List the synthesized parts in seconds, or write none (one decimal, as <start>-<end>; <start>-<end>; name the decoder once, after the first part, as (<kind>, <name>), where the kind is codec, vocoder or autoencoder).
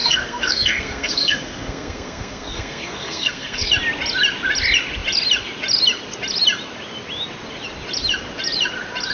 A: 0.0-3.7 (codec, SNAC)